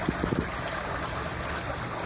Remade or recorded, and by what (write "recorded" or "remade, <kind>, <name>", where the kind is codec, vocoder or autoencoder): recorded